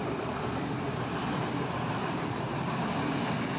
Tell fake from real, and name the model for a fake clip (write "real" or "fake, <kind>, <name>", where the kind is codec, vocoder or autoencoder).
real